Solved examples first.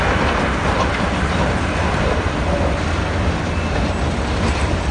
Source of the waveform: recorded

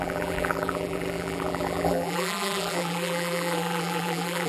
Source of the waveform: remade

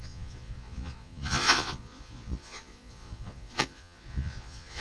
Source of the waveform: remade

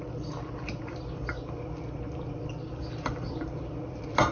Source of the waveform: remade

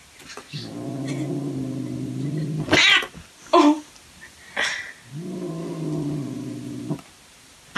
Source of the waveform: recorded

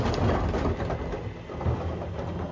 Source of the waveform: recorded